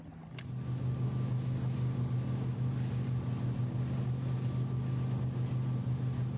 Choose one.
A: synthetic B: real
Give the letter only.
B